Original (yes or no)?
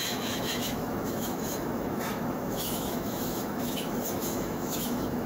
no